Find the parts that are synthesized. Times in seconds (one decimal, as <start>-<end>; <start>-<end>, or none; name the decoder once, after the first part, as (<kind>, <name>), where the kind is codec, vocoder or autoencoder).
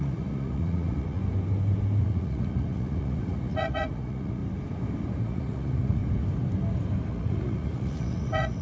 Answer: 0.0-1.2 (vocoder, Vocos); 2.0-4.4; 5.2-6.0; 7.1-8.6